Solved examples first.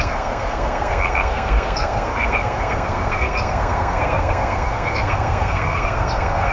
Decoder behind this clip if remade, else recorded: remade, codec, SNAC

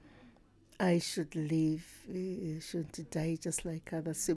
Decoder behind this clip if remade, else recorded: recorded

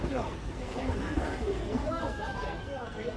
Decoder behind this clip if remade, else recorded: remade, codec, SNAC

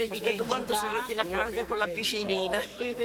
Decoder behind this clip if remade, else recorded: remade, codec, SNAC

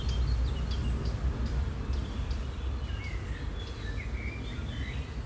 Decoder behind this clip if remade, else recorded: recorded